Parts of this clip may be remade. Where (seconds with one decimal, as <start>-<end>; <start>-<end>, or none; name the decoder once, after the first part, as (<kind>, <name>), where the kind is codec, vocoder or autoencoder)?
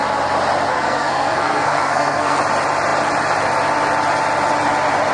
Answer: 0.7-2.4 (codec, SNAC)